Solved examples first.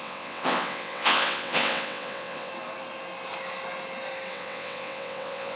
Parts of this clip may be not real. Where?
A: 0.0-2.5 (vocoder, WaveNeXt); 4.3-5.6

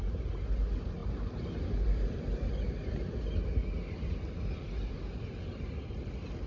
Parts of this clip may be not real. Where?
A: none

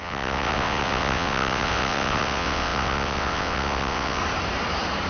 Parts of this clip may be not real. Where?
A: 0.0-4.2 (vocoder, WaveNeXt)

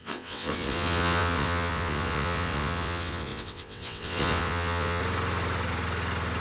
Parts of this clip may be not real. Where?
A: 0.0-5.0 (vocoder, WaveNeXt)

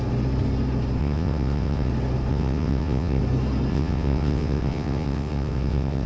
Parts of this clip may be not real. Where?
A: 1.0-1.9 (vocoder, WaveNeXt); 2.3-3.2; 3.7-6.1

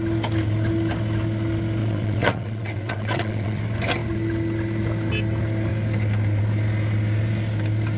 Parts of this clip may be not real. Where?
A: 1.8-3.6 (vocoder, WaveNeXt)

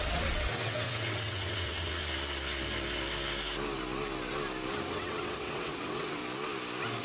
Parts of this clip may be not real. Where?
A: 0.0-2.0 (vocoder, WaveNeXt); 4.9-6.2